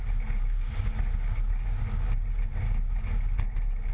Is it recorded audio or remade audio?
recorded